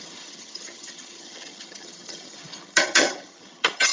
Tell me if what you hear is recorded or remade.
remade